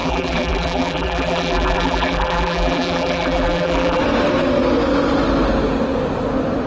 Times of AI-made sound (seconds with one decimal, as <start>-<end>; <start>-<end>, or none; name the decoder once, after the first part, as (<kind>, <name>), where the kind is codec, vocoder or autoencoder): 0.0-4.0 (vocoder, BigVGAN v2)